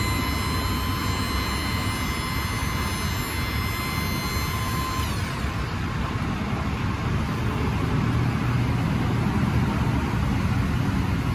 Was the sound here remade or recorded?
recorded